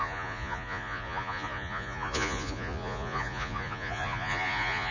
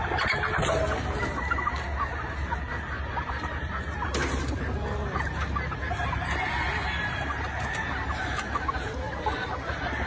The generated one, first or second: first